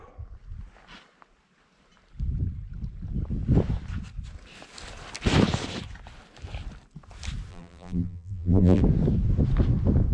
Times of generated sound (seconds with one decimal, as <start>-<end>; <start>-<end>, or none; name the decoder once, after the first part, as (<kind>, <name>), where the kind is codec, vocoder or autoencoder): 7.5-8.8 (vocoder, BigVGAN v2)